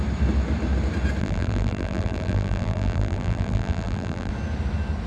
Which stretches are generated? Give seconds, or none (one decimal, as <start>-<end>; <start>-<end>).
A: 1.2-4.3